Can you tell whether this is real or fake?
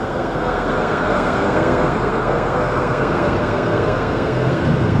fake